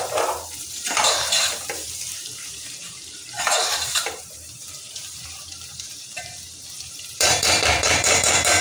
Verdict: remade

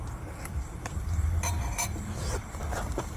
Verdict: remade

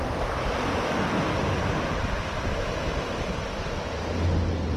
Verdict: recorded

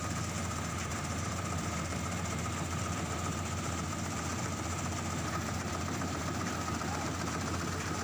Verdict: remade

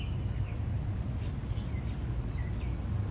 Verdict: recorded